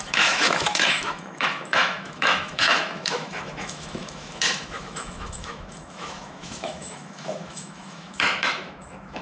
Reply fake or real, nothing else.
fake